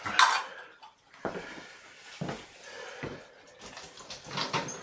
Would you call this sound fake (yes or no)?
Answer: no